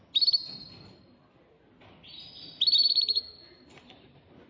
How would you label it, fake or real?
real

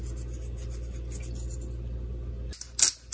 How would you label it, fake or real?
real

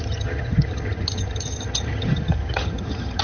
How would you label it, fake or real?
fake